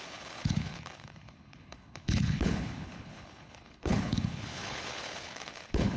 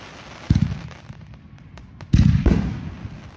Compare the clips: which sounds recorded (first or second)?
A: second